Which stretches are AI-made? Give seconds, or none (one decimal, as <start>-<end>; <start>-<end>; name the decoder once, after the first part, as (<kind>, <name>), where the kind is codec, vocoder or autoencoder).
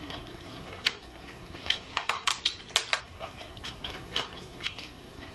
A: 0.0-2.3 (codec, SNAC); 3.0-5.3